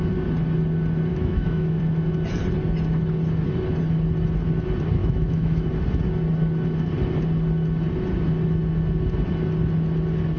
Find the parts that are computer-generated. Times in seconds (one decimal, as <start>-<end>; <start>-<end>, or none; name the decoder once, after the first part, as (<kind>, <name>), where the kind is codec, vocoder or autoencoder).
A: 1.1-1.8 (autoencoder, DAC-VAE); 5.0-5.7